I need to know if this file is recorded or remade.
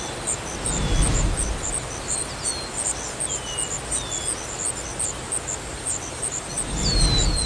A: recorded